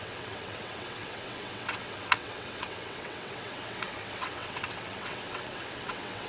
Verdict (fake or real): fake